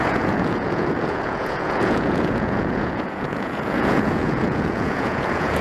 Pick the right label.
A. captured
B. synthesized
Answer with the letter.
B